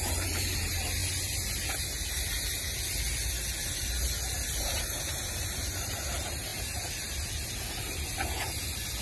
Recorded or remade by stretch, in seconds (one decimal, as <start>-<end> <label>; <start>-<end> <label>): 0.0-1.0 remade; 1.0-4.6 recorded; 4.6-6.5 remade; 6.5-9.0 recorded